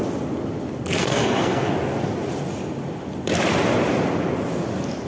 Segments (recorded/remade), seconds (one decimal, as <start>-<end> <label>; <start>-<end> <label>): 0.0-1.0 recorded; 1.0-1.7 remade; 1.7-5.1 recorded